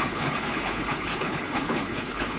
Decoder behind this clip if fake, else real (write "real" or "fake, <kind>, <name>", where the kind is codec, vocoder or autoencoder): fake, codec, HILCodec